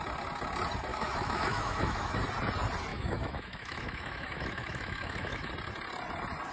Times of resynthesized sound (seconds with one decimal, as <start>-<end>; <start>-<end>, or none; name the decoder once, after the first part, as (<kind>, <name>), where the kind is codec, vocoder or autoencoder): 0.9-2.2 (autoencoder, DAC-VAE); 2.9-5.5